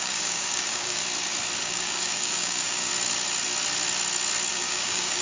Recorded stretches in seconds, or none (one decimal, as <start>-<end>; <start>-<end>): 1.0-1.6; 2.9-4.5